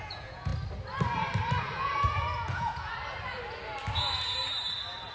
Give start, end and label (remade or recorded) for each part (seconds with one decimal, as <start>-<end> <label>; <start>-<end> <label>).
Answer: 0.0-0.5 remade; 0.5-1.6 recorded; 1.6-2.9 remade; 2.9-5.1 recorded